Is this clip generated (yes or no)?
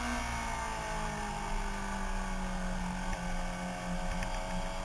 no